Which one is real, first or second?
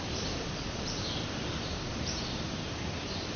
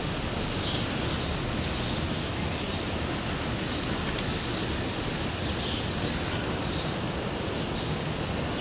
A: second